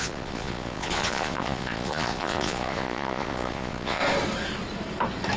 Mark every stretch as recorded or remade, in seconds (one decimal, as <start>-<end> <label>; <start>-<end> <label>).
0.0-4.0 remade; 4.0-5.4 recorded